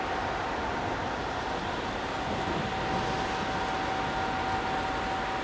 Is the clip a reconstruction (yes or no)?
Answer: no